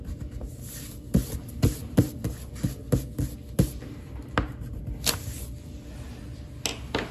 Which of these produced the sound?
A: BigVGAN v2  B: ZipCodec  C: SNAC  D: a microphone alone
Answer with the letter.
D